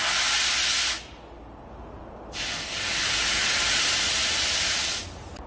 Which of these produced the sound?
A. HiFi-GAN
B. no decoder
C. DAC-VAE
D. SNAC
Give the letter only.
B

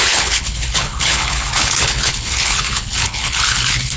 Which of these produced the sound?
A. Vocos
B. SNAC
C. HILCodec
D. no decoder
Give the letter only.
C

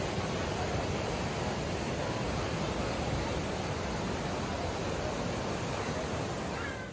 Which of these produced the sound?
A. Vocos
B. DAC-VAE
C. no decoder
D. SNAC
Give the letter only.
C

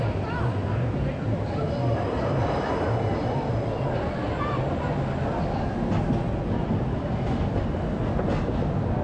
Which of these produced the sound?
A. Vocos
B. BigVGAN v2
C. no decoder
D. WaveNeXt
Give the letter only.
C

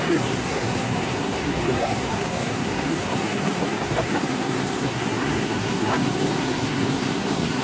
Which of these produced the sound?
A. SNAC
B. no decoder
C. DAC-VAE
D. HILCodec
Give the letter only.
A